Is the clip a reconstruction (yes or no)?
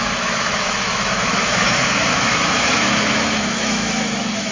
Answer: yes